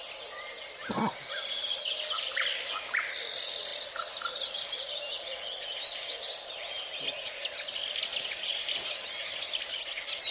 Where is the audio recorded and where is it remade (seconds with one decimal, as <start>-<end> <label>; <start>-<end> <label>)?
0.0-3.7 recorded; 3.7-4.9 remade; 4.9-10.3 recorded